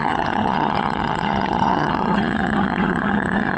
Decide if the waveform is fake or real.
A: fake